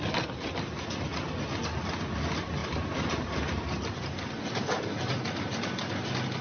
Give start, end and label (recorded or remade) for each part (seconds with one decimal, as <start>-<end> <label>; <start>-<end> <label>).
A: 0.0-6.4 recorded